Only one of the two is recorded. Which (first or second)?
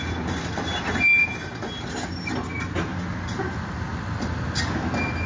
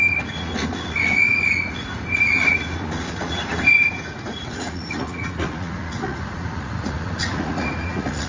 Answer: first